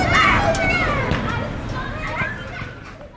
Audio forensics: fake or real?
real